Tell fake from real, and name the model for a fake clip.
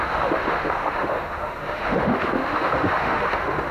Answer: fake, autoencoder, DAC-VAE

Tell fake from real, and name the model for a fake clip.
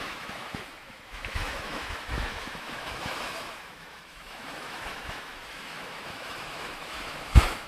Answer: fake, autoencoder, DAC-VAE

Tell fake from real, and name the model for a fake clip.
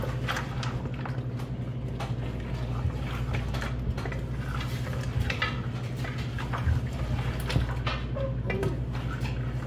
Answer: real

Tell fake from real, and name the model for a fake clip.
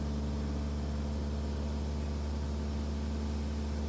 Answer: real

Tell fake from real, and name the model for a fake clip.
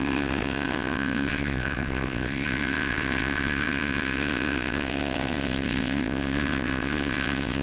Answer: fake, vocoder, WaveNeXt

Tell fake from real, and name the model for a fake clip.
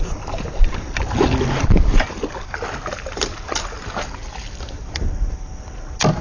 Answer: real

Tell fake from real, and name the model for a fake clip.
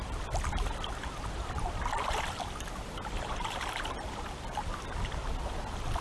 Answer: fake, vocoder, BigVGAN v2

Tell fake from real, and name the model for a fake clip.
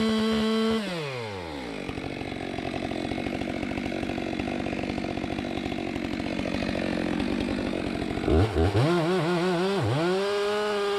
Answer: real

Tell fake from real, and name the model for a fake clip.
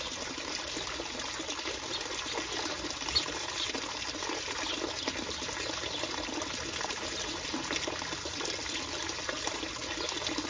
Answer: real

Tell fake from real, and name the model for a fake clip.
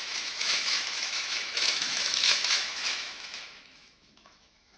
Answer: fake, autoencoder, DAC-VAE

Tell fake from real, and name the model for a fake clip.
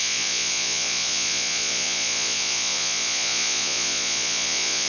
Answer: fake, vocoder, Vocos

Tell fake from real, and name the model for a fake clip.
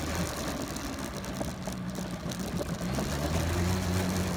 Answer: real